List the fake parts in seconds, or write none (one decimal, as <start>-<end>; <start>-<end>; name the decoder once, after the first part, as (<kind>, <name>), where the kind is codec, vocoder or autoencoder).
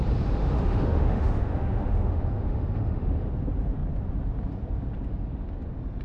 0.4-3.3 (autoencoder, DAC-VAE)